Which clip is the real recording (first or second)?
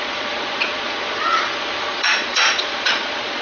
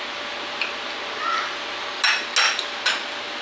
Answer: second